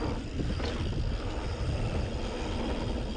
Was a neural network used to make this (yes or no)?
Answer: no